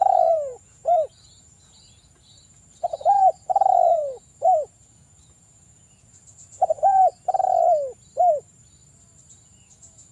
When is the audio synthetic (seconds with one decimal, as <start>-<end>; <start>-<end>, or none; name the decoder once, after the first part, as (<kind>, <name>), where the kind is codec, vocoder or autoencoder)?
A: 0.0-7.1 (vocoder, Vocos); 9.3-10.1